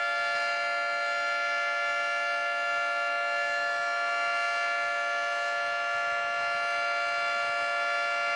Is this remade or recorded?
recorded